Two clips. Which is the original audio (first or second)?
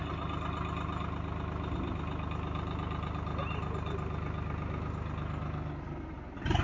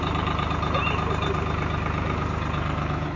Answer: first